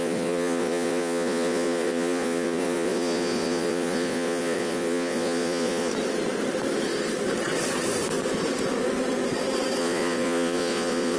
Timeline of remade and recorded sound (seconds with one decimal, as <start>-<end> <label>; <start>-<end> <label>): 0.0-5.9 remade; 5.9-9.8 recorded; 9.8-11.2 remade